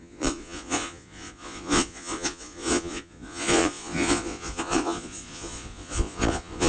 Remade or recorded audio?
remade